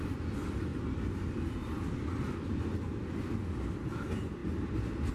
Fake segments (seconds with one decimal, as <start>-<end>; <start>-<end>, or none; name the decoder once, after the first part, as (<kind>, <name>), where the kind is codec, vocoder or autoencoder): none